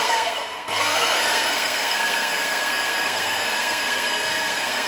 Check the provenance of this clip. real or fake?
fake